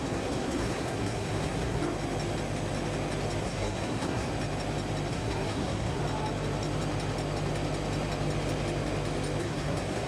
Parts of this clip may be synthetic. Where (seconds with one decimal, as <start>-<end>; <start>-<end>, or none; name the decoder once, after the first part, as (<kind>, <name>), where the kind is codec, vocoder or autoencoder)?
0.0-1.8 (codec, SNAC); 3.4-4.3; 5.1-6.0; 9.4-10.1